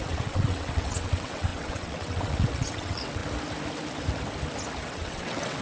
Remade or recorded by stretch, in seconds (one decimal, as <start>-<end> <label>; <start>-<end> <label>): 0.0-3.2 remade; 3.2-4.9 recorded; 4.9-5.6 remade